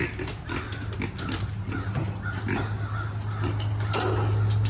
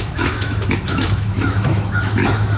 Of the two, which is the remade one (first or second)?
second